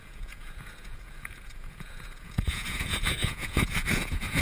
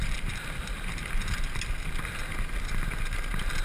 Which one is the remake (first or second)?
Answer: first